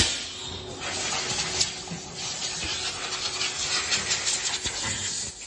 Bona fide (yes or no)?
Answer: yes